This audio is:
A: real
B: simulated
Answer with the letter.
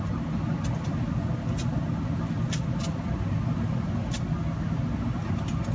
A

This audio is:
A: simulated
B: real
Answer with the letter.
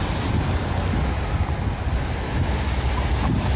B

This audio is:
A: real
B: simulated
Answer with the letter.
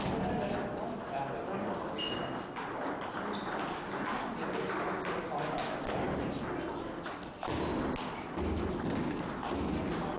A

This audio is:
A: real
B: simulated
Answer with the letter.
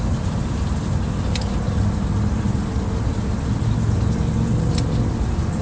A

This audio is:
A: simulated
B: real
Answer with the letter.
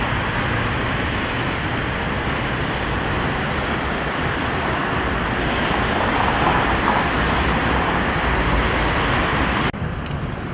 A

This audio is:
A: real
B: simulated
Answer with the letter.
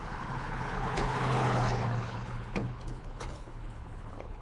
B